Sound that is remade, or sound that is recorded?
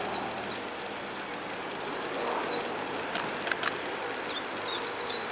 recorded